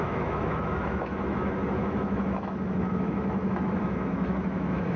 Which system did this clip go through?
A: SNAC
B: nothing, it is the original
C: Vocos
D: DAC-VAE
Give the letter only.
D